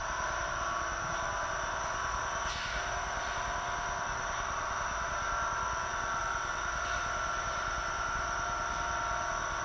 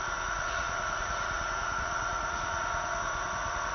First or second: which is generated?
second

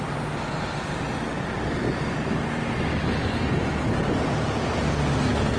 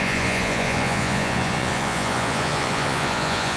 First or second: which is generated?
second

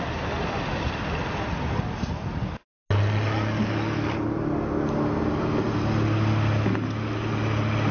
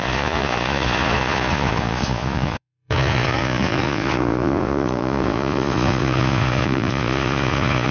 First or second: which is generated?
second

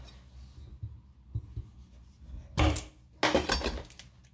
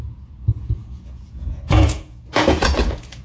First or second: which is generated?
second